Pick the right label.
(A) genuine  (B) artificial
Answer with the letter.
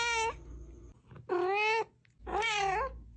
A